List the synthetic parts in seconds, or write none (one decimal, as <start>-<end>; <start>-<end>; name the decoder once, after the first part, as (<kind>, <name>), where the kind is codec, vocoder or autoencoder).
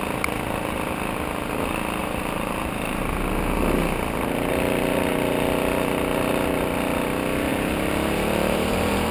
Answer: 2.0-3.0 (vocoder, BigVGAN v2); 7.5-9.1